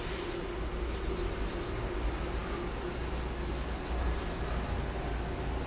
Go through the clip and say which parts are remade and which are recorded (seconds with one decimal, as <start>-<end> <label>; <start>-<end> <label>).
0.0-5.7 recorded